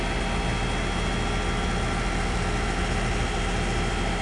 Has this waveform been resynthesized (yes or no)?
no